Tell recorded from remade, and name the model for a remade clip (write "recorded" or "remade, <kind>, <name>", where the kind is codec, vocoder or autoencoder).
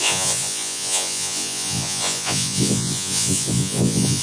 remade, vocoder, Vocos